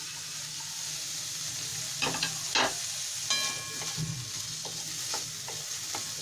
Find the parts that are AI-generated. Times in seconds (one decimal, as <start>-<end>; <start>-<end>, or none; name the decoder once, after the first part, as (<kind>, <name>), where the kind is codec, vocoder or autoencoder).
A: none